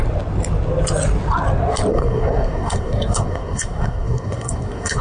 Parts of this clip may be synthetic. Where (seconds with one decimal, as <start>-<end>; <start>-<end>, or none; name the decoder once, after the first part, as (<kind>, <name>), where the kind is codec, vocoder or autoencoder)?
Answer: 1.9-5.0 (codec, SNAC)